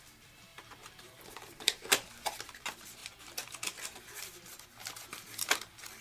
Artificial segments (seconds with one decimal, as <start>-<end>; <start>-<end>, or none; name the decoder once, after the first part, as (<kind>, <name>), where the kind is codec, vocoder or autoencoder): 0.5-1.9 (vocoder, BigVGAN v2)